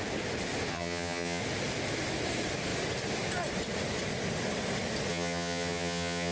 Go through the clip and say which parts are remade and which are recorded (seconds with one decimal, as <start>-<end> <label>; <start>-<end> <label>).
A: 0.0-0.7 recorded; 0.7-1.4 remade; 1.4-5.1 recorded; 5.1-6.3 remade